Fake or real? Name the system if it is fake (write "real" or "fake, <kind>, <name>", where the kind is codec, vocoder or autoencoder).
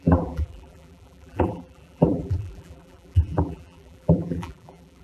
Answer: fake, vocoder, BigVGAN v2